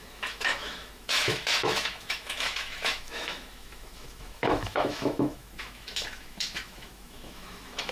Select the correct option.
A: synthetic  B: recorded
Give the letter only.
A